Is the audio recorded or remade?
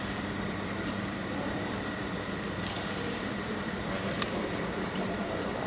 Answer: remade